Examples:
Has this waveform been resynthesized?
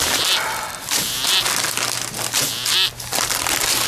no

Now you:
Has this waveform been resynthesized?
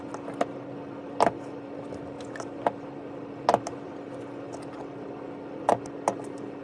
no